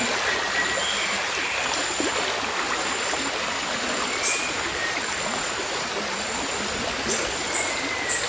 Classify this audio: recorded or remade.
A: recorded